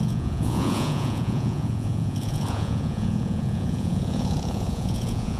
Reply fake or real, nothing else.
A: fake